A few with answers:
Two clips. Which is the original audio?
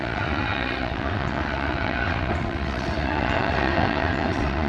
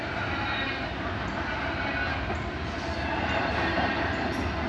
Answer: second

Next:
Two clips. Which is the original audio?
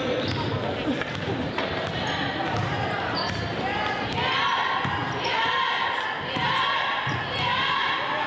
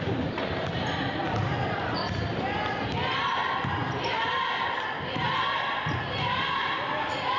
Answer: first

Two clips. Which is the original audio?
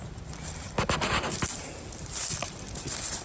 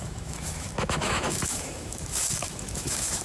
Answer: first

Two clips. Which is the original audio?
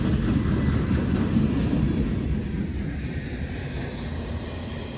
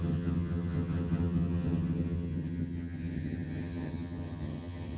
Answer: first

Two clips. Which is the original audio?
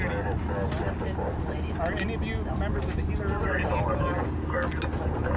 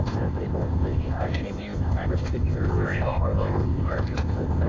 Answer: first